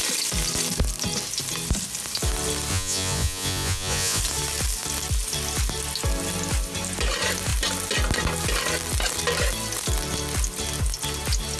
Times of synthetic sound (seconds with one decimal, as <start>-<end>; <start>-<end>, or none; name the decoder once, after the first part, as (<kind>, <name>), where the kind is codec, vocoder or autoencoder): 2.7-4.2 (vocoder, Vocos)

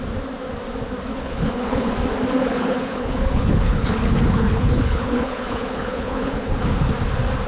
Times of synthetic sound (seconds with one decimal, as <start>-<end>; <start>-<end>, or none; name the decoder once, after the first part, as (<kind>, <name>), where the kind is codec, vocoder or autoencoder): 1.1-1.9 (codec, HILCodec); 2.4-6.9

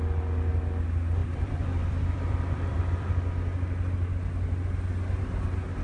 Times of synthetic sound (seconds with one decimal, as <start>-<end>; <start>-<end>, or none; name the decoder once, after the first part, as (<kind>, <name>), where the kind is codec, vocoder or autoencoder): 1.2-3.1 (vocoder, BigVGAN v2)

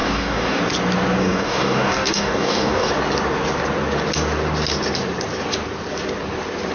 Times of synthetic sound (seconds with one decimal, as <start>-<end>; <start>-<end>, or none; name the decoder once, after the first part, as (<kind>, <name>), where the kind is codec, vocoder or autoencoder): 0.0-0.6 (codec, DAC); 1.2-2.9

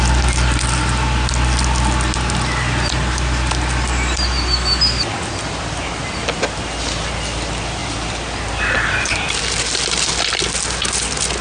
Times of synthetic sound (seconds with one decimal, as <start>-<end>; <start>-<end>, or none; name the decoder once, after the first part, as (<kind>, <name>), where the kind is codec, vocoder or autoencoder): 7.8-9.4 (vocoder, BigVGAN v2)

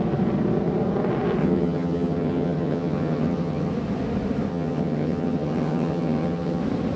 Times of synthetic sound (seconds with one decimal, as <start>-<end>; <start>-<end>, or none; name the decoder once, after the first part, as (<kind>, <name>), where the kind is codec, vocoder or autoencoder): 1.4-3.7 (vocoder, HiFi-GAN); 4.5-6.6